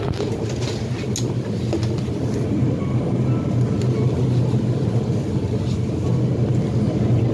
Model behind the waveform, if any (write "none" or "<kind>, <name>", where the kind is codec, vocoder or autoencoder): none